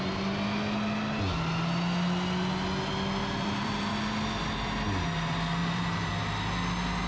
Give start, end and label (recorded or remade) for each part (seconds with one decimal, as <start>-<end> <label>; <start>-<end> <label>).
0.0-3.2 recorded; 3.2-3.9 remade; 3.9-5.6 recorded; 5.6-6.1 remade; 6.1-7.1 recorded